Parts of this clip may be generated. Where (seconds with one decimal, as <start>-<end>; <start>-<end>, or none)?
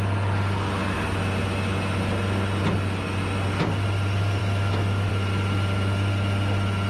4.4-5.1